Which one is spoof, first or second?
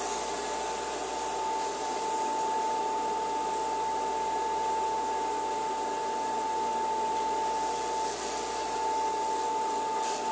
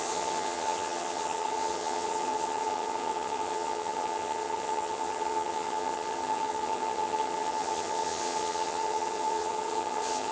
second